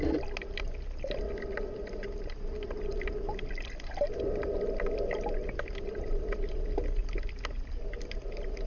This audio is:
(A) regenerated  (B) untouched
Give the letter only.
B